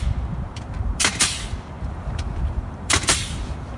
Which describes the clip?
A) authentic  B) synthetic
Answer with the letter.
B